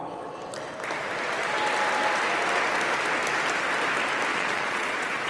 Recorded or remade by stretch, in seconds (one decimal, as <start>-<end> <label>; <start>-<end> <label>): 0.0-4.3 recorded; 4.3-5.3 remade